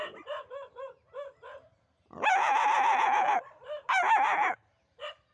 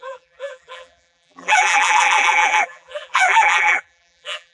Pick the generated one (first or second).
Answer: second